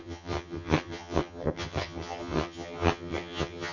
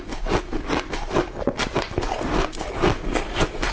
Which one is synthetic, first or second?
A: first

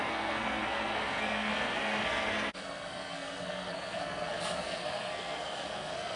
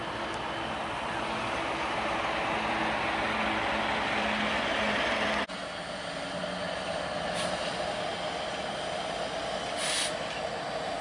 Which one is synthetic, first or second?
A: first